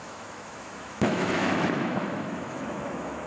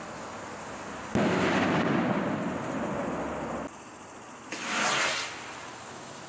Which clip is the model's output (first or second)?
first